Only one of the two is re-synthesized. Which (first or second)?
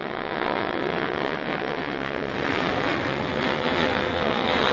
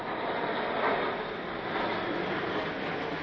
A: first